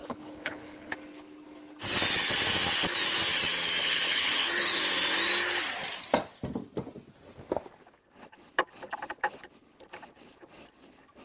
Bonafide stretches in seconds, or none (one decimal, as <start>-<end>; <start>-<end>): 0.9-3.8; 4.8-11.2